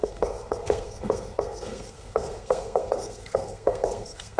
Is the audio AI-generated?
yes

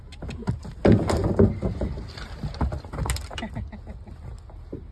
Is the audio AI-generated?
no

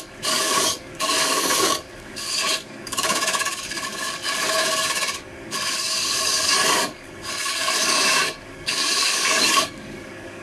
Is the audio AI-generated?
yes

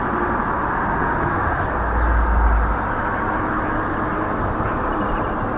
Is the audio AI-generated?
no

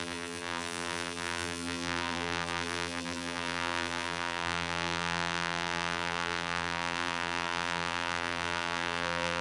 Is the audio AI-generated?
yes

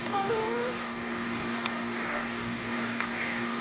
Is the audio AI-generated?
yes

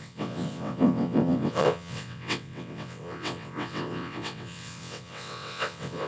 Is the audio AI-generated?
yes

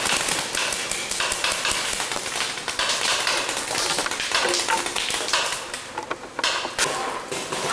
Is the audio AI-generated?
no